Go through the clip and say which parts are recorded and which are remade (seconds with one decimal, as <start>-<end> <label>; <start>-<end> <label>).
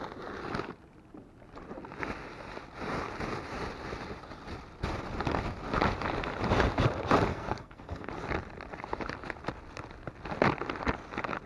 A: 0.0-7.3 recorded; 7.3-8.1 remade; 8.1-11.5 recorded